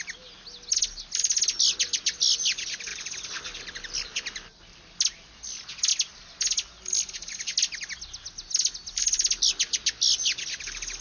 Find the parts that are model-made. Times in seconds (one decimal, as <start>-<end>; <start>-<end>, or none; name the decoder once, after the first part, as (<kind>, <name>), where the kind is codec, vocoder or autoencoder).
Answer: none